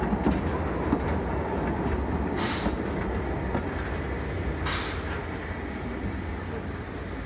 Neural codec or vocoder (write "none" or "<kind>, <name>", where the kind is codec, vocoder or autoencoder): none